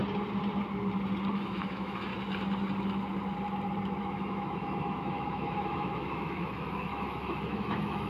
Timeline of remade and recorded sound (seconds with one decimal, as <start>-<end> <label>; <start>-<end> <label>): 0.0-1.3 recorded; 1.3-2.1 remade; 2.1-4.0 recorded; 4.0-8.1 remade

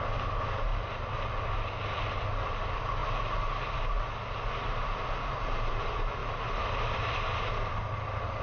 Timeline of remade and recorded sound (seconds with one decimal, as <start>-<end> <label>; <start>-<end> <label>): 0.0-8.4 recorded

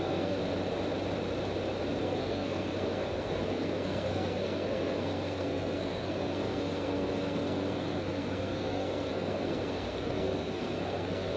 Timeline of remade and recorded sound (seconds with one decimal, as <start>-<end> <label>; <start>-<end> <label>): 0.0-0.4 remade; 0.4-2.0 recorded; 2.0-11.4 remade